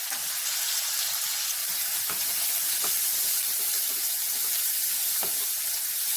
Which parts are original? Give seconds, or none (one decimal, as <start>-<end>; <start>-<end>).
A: 0.0-1.6; 2.4-3.1; 5.8-6.2